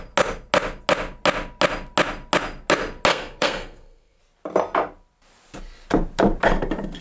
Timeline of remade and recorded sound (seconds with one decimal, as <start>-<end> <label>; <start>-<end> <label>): 0.0-3.1 recorded; 3.1-4.2 remade; 4.2-7.0 recorded